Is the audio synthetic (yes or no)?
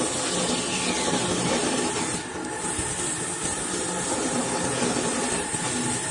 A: no